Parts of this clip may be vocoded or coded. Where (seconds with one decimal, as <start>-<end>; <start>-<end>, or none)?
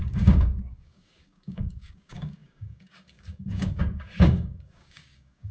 0.0-5.5